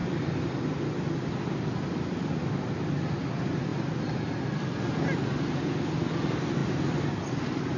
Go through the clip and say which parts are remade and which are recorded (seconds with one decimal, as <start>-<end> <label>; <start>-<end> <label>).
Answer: 0.0-2.5 remade; 2.5-3.7 recorded; 3.7-4.7 remade; 4.7-7.8 recorded